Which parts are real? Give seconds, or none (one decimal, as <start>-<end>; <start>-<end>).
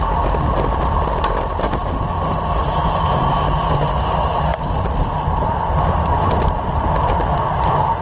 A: 0.0-8.0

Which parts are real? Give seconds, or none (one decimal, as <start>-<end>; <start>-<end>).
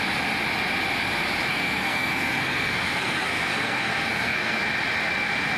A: 0.0-1.5; 4.6-5.6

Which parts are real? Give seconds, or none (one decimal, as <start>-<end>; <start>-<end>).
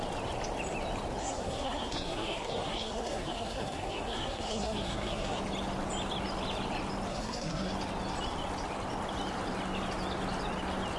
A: 0.0-1.2; 5.4-7.1; 7.7-11.0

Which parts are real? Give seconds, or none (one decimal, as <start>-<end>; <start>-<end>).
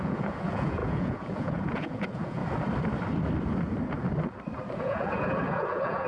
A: 2.4-4.8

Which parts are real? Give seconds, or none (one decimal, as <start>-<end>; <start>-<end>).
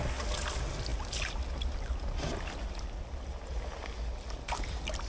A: 0.0-5.1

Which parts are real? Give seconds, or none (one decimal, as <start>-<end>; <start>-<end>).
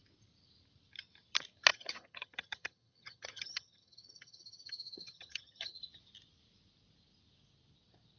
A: 0.0-1.7; 5.8-8.2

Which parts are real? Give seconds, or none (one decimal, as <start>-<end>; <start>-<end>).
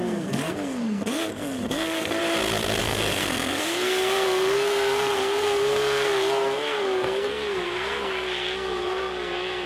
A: 2.2-2.8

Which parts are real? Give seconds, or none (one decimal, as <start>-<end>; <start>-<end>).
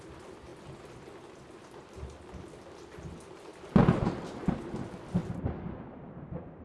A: 0.0-6.6